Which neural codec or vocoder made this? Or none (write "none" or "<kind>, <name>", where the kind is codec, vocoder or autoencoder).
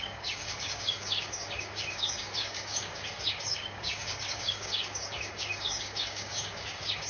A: codec, DAC